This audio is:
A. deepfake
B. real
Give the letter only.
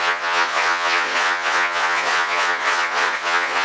A